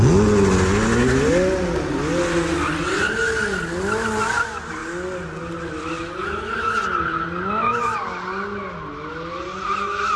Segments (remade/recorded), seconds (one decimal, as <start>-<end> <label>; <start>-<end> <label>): 0.0-10.2 recorded